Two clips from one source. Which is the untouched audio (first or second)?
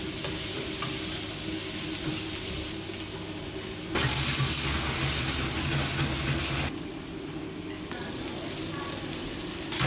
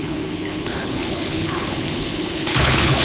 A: first